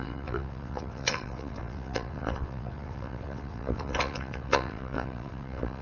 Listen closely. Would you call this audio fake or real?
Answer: fake